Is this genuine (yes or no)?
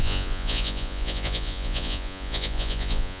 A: no